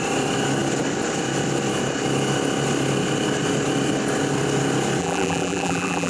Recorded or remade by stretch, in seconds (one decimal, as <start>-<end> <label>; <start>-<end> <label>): 0.0-5.0 recorded; 5.0-6.1 remade